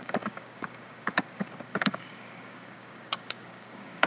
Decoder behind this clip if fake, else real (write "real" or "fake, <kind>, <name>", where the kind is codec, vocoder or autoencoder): fake, codec, DAC